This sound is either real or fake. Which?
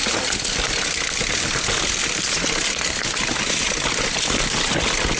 real